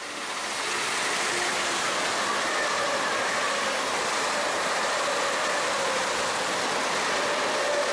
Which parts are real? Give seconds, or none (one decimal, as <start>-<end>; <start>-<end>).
0.0-7.9